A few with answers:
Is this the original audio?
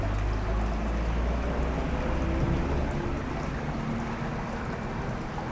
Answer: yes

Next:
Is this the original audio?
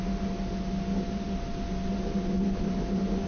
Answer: yes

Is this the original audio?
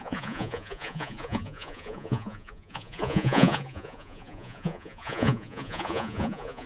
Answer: no